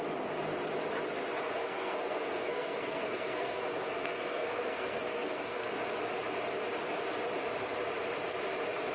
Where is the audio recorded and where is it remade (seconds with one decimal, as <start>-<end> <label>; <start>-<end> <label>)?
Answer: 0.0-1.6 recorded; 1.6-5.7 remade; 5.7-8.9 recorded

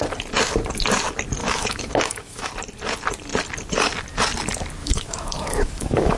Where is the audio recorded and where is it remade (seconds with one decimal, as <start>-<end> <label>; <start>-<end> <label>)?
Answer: 0.0-1.4 recorded; 1.4-2.5 remade; 2.5-4.8 recorded; 4.8-6.2 remade

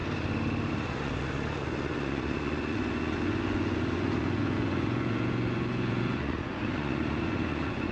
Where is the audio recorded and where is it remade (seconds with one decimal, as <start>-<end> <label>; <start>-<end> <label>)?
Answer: 0.0-0.7 recorded; 0.7-7.9 remade

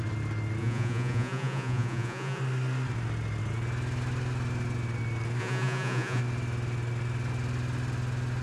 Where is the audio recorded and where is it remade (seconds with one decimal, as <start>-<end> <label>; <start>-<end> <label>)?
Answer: 0.0-0.6 recorded; 0.6-2.4 remade; 2.4-5.4 recorded; 5.4-6.2 remade; 6.2-8.4 recorded

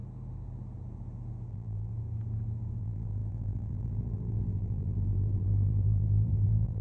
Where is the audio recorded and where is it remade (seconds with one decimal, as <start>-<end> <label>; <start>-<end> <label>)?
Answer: 0.0-1.5 recorded; 1.5-1.9 remade; 1.9-2.8 recorded; 2.8-6.8 remade

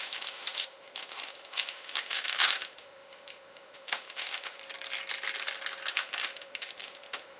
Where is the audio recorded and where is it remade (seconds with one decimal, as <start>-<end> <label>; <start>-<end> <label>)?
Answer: 0.0-4.6 remade; 4.6-5.9 recorded; 5.9-7.4 remade

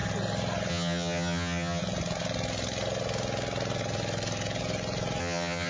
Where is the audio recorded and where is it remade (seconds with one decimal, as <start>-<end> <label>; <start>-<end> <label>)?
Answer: 0.0-0.7 recorded; 0.7-1.8 remade; 1.8-5.2 recorded; 5.2-5.7 remade

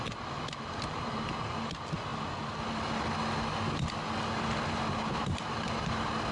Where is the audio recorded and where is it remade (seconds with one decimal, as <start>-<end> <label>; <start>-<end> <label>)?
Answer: 0.0-6.3 recorded